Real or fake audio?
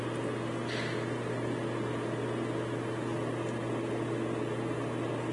real